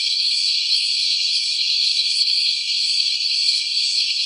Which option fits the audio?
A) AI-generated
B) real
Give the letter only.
A